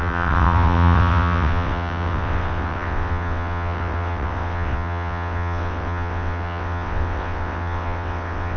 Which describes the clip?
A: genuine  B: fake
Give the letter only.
B